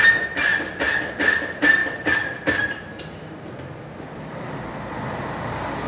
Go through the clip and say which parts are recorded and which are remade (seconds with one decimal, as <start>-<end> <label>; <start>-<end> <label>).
0.0-5.9 recorded